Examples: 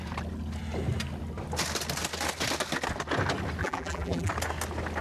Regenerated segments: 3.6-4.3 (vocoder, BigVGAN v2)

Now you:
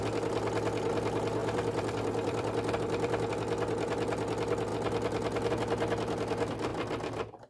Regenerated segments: 1.4-3.3 (vocoder, BigVGAN v2)

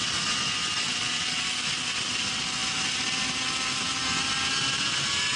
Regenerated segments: none

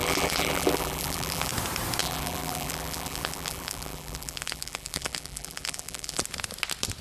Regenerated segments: 0.0-1.5 (vocoder, BigVGAN v2); 2.0-6.2

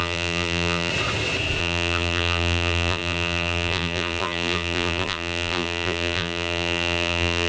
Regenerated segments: 0.0-0.9 (vocoder, BigVGAN v2); 1.6-7.5

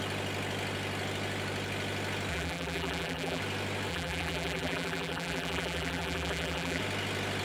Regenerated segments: 2.3-3.4 (vocoder, BigVGAN v2); 3.9-6.8